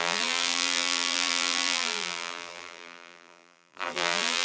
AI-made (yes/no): yes